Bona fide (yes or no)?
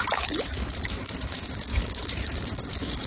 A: no